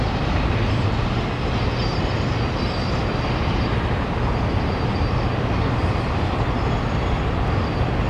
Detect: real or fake real